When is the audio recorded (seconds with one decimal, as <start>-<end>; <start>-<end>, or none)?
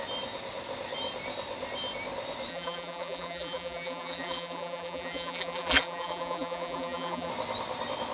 0.0-2.5; 7.3-8.1